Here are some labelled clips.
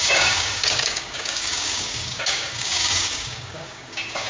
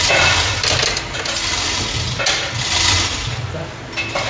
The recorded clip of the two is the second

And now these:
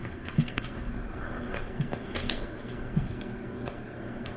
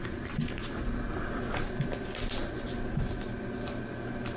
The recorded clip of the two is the second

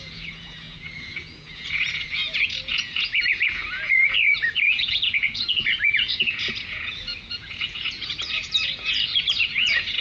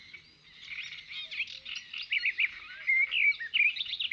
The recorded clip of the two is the second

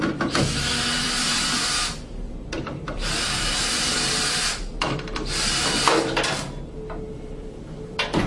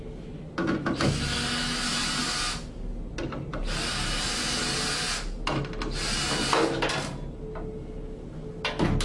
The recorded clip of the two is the second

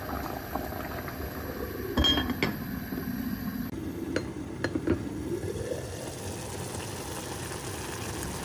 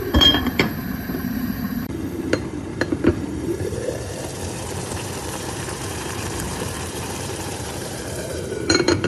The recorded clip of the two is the first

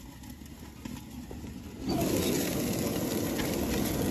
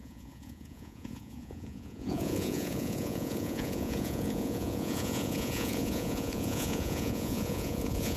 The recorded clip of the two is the first